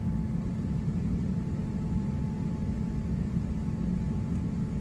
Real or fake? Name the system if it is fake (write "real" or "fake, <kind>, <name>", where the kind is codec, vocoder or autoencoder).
real